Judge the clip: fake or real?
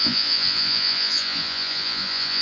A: fake